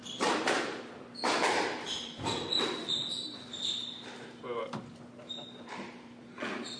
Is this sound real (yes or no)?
no